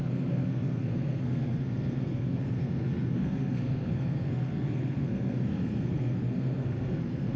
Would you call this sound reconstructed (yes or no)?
yes